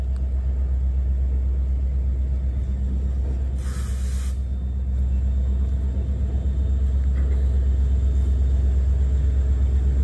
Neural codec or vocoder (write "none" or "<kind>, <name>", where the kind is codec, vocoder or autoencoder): none